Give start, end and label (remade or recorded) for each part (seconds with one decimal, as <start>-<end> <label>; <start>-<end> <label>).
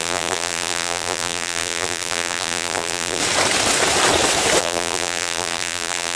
0.0-3.2 remade; 3.2-4.6 recorded; 4.6-6.2 remade